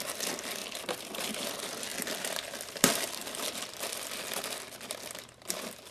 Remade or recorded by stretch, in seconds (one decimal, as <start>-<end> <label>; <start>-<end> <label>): 0.0-0.6 recorded; 0.6-1.2 remade; 1.2-1.9 recorded; 1.9-4.1 remade; 4.1-5.9 recorded